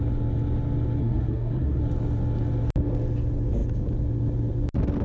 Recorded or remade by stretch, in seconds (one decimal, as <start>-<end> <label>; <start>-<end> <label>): 0.0-1.0 recorded; 1.0-1.8 remade; 1.8-5.0 recorded